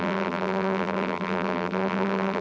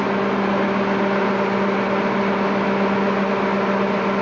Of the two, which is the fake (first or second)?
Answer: first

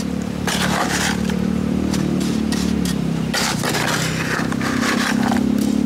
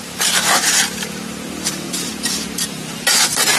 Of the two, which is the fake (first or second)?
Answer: second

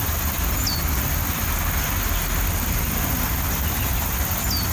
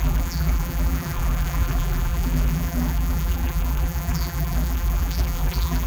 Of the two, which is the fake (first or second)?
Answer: second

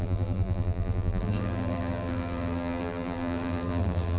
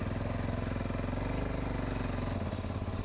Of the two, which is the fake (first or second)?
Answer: first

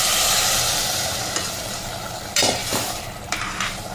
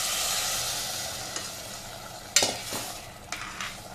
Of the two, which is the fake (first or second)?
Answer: first